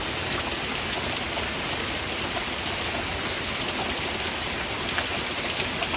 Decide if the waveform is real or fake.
real